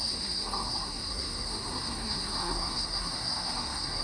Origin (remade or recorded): remade